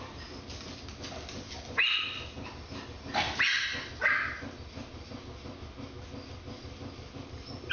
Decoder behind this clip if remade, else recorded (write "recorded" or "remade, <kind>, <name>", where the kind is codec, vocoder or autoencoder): recorded